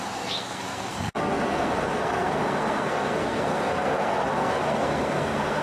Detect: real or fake fake